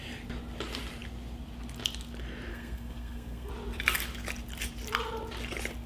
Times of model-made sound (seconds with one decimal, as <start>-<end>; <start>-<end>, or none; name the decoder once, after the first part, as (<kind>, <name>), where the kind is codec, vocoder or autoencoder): 2.5-3.5 (codec, SNAC)